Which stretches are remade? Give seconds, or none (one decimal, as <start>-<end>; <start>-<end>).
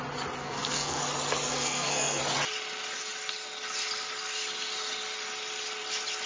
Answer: 0.4-1.0; 1.5-2.2